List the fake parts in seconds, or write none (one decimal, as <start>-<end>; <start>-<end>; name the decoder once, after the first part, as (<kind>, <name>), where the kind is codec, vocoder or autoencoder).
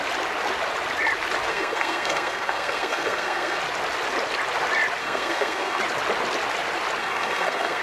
1.5-3.6 (codec, SNAC); 5.0-5.8; 7.0-7.8